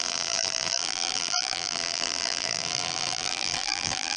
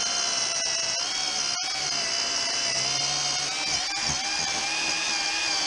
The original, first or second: second